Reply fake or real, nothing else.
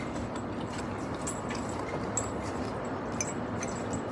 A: real